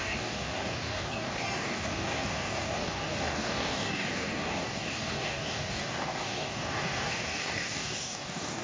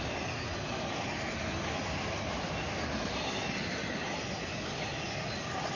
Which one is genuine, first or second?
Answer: second